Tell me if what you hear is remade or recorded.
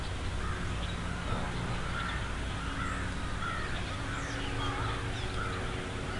recorded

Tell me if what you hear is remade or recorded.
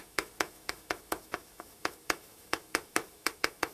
remade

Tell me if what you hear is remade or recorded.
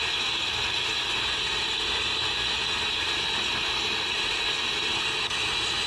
recorded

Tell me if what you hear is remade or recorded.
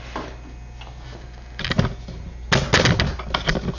recorded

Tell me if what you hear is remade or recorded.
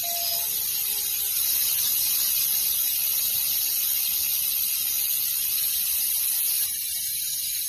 recorded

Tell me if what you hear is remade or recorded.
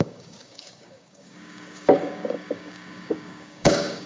remade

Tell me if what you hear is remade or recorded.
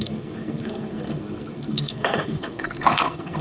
remade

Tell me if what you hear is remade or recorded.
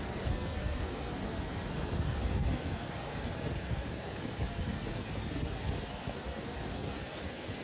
remade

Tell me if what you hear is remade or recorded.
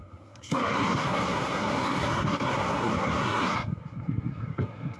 remade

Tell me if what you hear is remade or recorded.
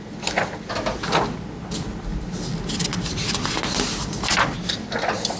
recorded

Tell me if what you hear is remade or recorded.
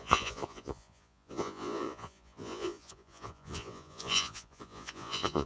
remade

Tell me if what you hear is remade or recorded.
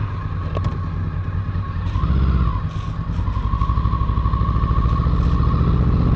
recorded